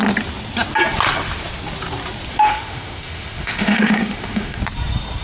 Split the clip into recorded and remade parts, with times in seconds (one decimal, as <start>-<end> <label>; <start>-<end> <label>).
0.0-2.3 recorded; 2.3-4.6 remade; 4.6-5.2 recorded